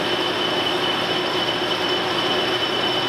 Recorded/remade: recorded